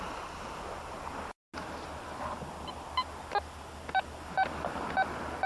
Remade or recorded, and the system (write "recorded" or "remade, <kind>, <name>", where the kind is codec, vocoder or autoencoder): recorded